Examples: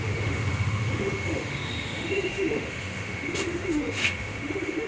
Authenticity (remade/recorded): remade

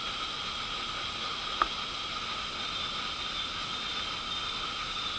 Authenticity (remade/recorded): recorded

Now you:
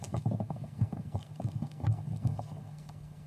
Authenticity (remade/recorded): remade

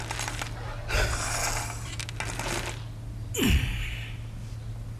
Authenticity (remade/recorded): recorded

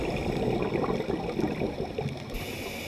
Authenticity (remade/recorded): recorded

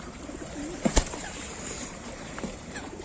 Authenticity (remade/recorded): remade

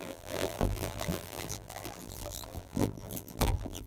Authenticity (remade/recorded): remade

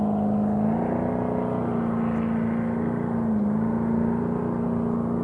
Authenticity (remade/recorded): recorded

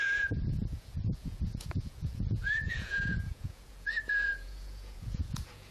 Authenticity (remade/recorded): remade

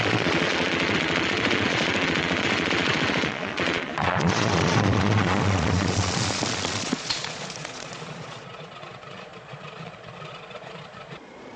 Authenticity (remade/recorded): remade